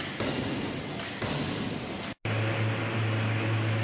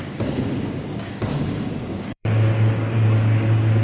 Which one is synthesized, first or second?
second